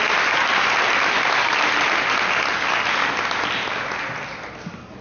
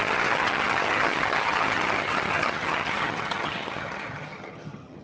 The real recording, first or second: first